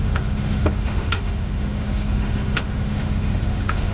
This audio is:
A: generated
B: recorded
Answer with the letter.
A